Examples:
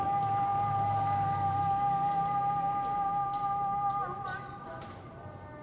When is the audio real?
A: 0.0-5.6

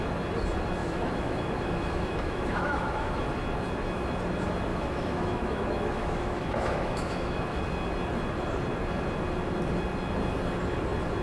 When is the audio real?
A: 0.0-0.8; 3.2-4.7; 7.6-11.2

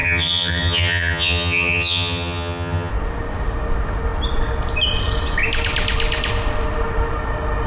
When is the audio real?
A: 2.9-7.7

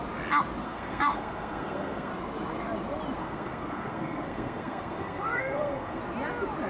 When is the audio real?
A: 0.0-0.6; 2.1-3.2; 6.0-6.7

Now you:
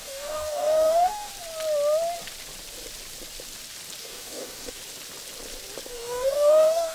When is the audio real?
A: 1.3-4.0; 4.8-5.9

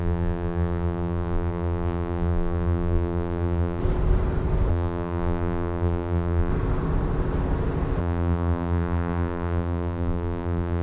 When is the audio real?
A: 3.8-4.7; 6.5-8.0

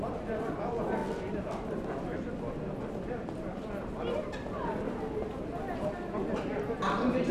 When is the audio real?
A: 0.0-7.3

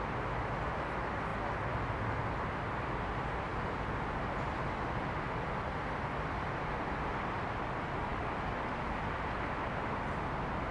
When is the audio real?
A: 0.0-10.7